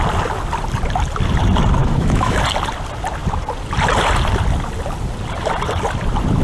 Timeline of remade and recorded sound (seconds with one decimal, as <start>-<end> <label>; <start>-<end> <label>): 0.0-1.8 recorded; 1.8-2.4 remade; 2.4-6.4 recorded